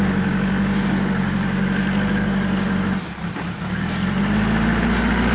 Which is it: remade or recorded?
recorded